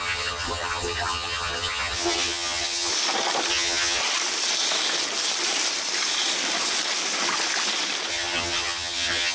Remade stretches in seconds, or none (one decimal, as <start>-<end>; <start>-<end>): 0.0-2.9; 3.5-4.0; 8.1-9.3